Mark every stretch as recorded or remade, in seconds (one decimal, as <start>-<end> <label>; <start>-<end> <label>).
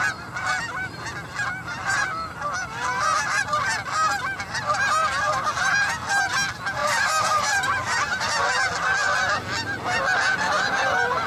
0.0-6.8 recorded; 6.8-8.3 remade; 8.3-11.3 recorded